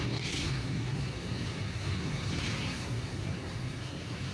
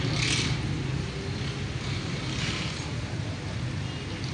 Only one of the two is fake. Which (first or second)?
first